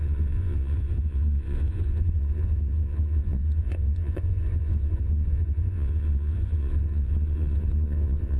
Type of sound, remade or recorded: remade